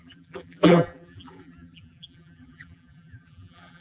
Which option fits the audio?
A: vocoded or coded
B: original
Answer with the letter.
A